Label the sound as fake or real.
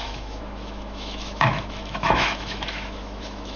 fake